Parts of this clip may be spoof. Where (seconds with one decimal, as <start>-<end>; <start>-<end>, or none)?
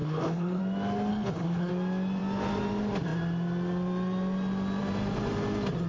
0.0-0.6; 1.1-1.7